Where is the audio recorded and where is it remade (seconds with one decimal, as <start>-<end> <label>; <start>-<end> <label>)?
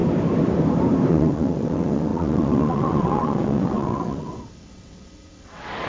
0.0-1.1 recorded; 1.1-5.9 remade